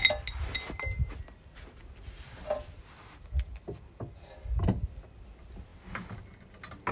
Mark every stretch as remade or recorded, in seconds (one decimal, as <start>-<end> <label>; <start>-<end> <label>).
0.0-6.9 recorded